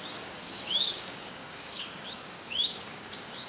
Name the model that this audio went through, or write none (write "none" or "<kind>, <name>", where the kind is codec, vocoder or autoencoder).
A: codec, DAC